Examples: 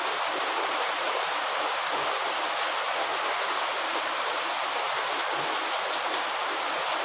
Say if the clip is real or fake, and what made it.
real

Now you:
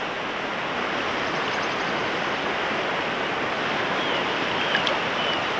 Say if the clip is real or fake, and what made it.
real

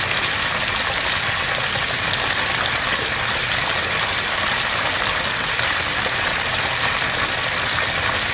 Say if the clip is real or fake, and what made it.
real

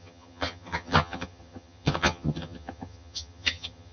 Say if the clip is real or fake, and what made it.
fake, vocoder, HiFi-GAN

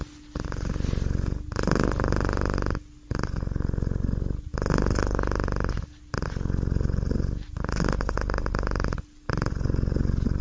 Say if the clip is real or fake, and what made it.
real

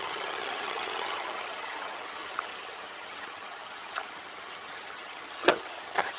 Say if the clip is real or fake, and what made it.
fake, vocoder, HiFi-GAN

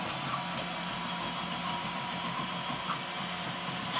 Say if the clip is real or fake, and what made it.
real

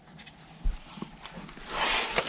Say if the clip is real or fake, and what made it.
real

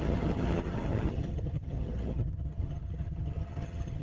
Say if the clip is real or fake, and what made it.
fake, vocoder, HiFi-GAN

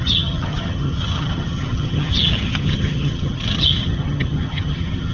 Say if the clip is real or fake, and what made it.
fake, vocoder, HiFi-GAN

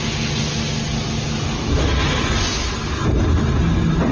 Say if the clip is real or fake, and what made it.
real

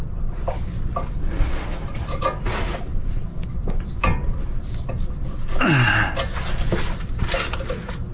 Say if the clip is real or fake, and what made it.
real